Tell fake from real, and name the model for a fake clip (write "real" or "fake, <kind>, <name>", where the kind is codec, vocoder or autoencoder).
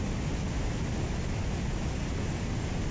real